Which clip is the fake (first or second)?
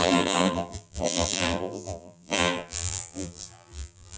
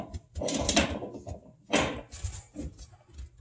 first